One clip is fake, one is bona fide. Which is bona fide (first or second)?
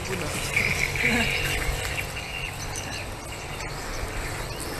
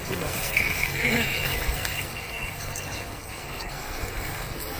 first